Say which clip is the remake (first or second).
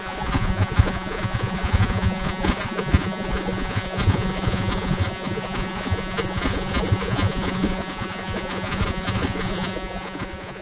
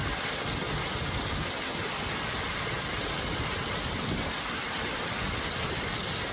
first